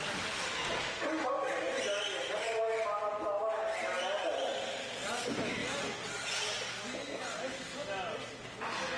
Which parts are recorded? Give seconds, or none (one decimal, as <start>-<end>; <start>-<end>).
0.0-9.0